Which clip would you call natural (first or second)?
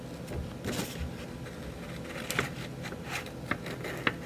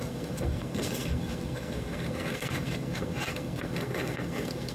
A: first